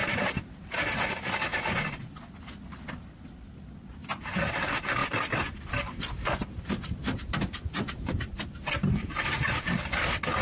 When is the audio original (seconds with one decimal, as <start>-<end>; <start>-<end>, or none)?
0.7-5.0; 9.8-10.4